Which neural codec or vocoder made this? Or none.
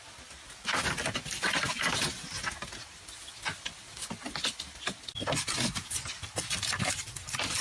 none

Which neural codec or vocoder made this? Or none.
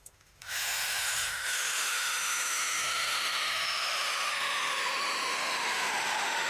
autoencoder, DAC-VAE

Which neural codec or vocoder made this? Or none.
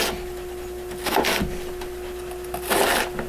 none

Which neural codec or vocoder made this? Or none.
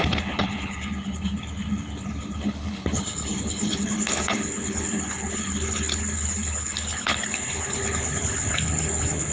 codec, HILCodec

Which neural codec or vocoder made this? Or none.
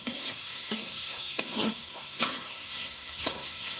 codec, SNAC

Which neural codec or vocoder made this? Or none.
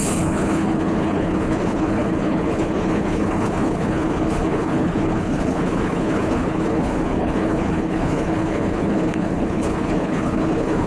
codec, HILCodec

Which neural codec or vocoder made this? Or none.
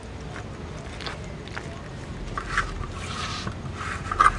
none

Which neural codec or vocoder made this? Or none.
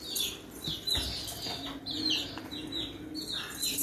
none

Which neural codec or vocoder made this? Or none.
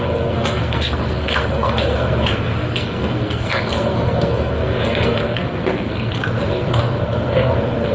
codec, SNAC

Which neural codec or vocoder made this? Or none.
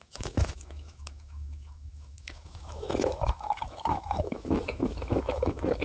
autoencoder, DAC-VAE